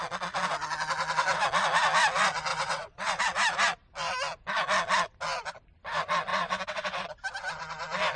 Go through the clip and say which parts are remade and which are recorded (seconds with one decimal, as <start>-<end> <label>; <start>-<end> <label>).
0.0-2.5 recorded; 2.5-3.2 remade; 3.2-6.3 recorded; 6.3-7.0 remade; 7.0-8.2 recorded